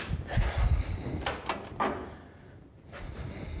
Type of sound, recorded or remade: recorded